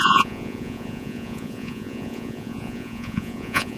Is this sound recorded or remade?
remade